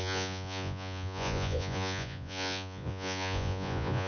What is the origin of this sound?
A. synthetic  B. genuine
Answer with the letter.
A